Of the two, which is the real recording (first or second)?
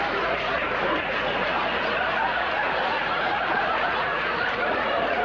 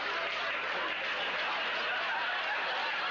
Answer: second